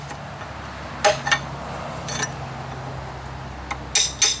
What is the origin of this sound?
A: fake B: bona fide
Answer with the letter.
B